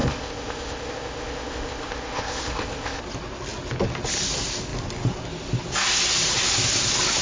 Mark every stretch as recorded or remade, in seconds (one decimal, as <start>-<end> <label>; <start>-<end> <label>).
0.0-3.0 remade; 3.0-7.2 recorded